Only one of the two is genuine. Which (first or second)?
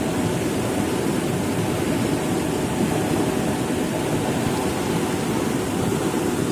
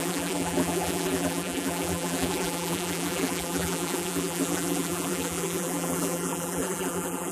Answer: first